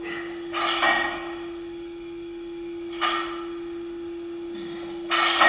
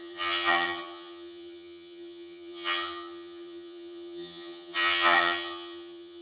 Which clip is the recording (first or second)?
first